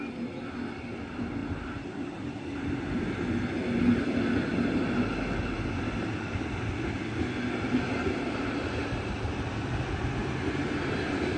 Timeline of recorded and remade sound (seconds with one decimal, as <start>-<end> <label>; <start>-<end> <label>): 0.0-1.4 recorded; 1.4-3.0 remade; 3.0-11.4 recorded